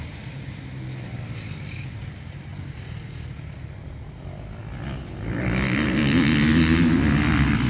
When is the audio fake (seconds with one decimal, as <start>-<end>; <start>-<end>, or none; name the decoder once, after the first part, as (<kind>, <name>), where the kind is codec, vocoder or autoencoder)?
none